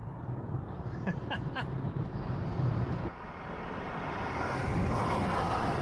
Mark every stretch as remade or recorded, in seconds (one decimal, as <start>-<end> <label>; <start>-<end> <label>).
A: 0.0-5.8 recorded